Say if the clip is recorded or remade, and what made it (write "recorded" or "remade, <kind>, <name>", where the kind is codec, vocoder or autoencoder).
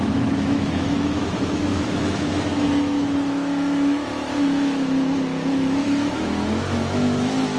remade, autoencoder, DAC-VAE